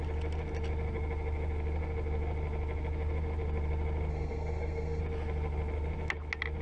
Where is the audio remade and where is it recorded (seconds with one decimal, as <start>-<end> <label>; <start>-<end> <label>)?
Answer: 0.0-4.1 recorded; 4.1-5.0 remade; 5.0-6.6 recorded